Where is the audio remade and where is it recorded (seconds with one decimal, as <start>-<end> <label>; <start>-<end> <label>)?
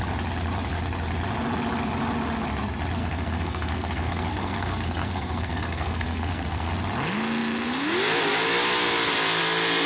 0.0-3.0 recorded; 3.0-6.7 remade; 6.7-9.9 recorded